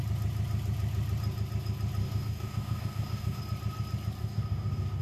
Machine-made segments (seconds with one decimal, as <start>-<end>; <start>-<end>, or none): 2.0-3.4; 4.2-5.0

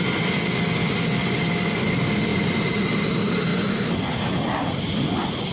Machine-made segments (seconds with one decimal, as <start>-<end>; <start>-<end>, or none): none